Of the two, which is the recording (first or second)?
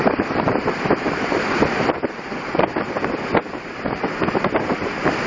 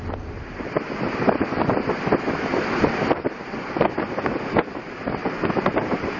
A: second